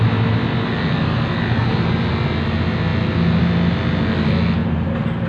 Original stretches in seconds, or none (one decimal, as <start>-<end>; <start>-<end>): 0.0-1.6; 2.1-4.6